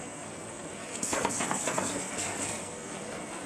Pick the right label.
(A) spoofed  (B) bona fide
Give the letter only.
A